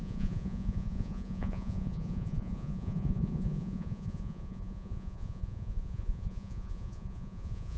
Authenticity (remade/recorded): remade